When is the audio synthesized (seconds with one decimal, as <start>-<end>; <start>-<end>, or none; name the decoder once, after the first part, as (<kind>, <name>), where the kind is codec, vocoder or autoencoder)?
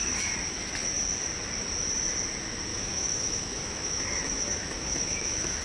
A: 2.7-5.6 (autoencoder, DAC-VAE)